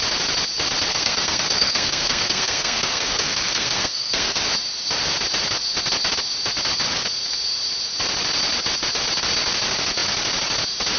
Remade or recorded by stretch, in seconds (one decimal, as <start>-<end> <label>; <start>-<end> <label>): 0.0-0.9 recorded; 0.9-4.4 remade; 4.4-11.0 recorded